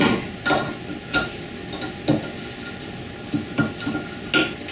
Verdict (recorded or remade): recorded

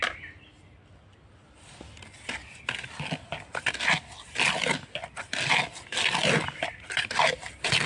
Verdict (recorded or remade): recorded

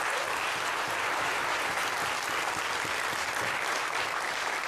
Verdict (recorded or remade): recorded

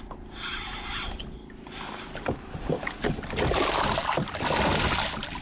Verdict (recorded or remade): recorded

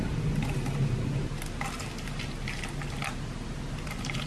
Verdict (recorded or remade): recorded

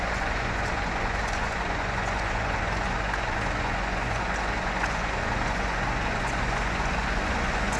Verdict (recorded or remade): remade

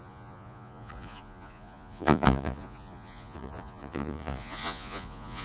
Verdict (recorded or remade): remade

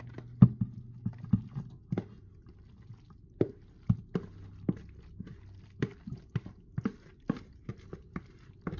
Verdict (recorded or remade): recorded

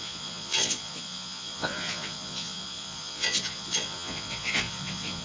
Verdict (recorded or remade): remade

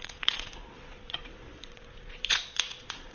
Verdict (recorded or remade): remade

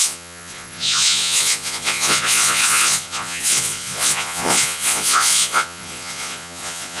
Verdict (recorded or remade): remade